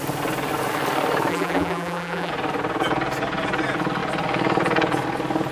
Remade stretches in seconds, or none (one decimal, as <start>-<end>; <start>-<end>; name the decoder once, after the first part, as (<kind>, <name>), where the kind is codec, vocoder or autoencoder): 1.3-2.3 (vocoder, BigVGAN v2)